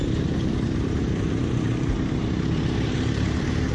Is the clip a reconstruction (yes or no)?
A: yes